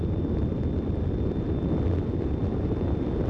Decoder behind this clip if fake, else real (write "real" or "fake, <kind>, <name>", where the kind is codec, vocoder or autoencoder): real